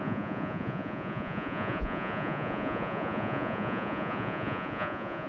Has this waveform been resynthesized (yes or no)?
yes